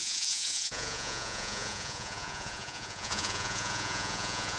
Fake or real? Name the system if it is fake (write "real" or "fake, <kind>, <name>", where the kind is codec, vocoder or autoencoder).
fake, vocoder, Vocos